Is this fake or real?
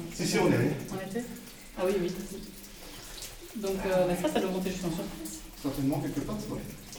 real